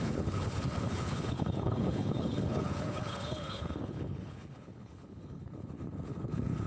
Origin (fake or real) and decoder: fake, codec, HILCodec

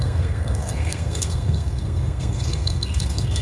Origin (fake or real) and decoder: fake, codec, SNAC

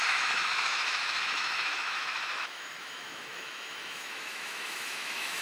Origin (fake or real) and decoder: fake, autoencoder, DAC-VAE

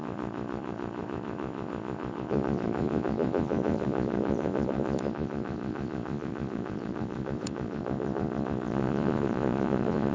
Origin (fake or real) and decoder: fake, vocoder, Vocos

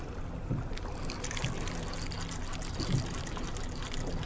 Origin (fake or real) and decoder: real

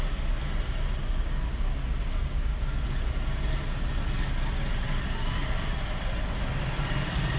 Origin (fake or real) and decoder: real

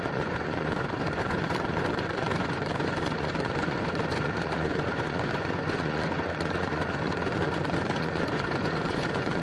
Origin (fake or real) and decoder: fake, vocoder, Vocos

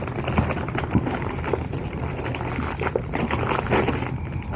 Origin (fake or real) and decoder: real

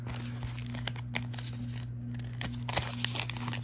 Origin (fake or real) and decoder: real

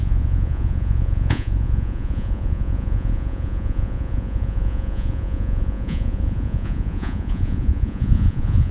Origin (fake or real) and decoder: fake, vocoder, Vocos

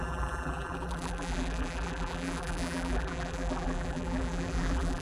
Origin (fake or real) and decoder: fake, vocoder, BigVGAN v2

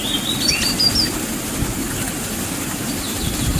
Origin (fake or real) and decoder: real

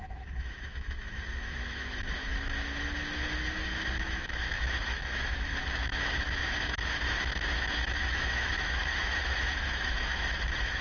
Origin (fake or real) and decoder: fake, autoencoder, DAC-VAE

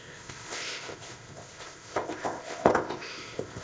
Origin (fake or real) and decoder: fake, codec, ZipCodec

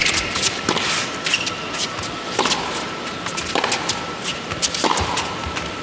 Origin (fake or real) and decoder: real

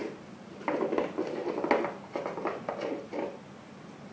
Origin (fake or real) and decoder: real